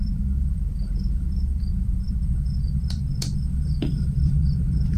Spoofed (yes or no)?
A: yes